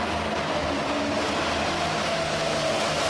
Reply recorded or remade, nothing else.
recorded